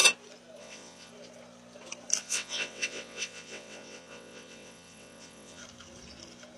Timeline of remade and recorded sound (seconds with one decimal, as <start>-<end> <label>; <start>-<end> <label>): 0.0-0.6 recorded; 0.6-1.1 remade; 1.1-2.2 recorded; 2.2-5.6 remade; 5.6-6.6 recorded